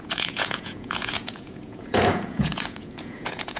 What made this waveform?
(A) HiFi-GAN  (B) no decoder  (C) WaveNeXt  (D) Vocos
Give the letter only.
D